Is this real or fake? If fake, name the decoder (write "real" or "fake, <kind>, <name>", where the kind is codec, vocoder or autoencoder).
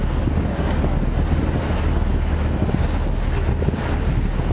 real